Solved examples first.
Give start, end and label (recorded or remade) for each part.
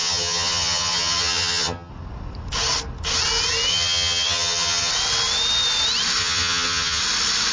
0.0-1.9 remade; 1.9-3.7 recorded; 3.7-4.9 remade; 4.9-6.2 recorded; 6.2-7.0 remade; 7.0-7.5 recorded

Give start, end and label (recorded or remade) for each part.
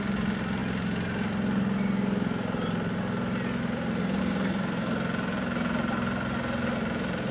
0.0-7.3 recorded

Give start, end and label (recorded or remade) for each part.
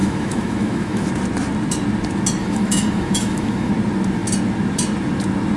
0.0-1.1 remade; 1.1-2.4 recorded; 2.4-3.7 remade; 3.7-5.6 recorded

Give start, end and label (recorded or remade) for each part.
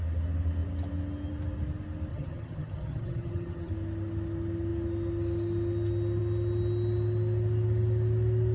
0.0-2.1 recorded; 2.1-3.7 remade; 3.7-8.5 recorded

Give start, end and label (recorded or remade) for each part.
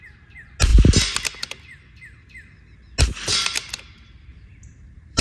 0.0-4.3 recorded; 4.3-5.2 remade